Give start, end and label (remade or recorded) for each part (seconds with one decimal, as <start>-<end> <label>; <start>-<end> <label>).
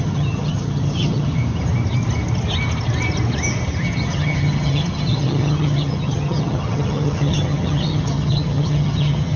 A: 0.0-1.4 remade; 1.4-3.8 recorded; 3.8-9.4 remade